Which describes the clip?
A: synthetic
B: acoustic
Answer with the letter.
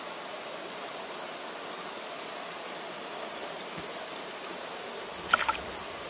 B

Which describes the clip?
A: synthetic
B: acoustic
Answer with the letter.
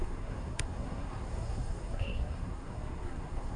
A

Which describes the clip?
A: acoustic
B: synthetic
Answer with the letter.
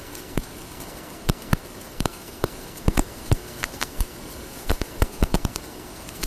B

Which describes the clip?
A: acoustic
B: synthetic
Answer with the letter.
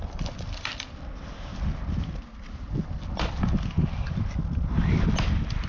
A